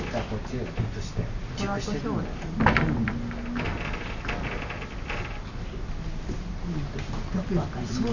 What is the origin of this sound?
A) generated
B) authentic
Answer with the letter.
B